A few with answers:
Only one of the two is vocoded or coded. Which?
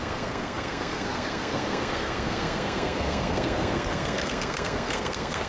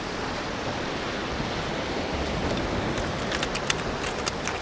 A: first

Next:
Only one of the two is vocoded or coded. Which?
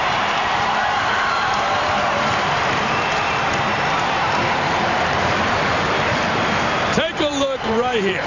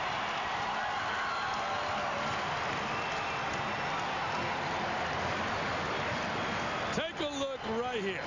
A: first